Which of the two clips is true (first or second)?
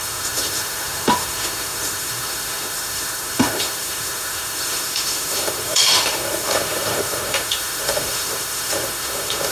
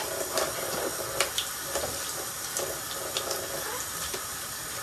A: second